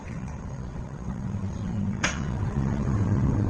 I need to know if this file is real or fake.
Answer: fake